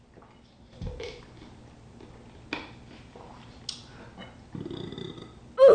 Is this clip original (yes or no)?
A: yes